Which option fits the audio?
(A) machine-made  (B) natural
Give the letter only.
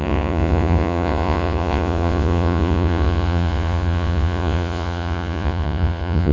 A